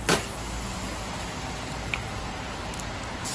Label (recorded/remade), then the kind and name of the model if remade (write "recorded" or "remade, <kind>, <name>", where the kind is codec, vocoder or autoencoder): recorded